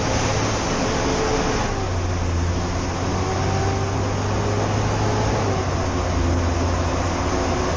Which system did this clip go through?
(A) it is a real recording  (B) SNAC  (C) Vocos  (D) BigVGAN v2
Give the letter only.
A